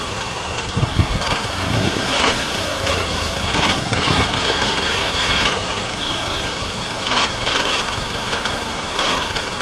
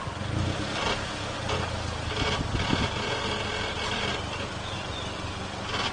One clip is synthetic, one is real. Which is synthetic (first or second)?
first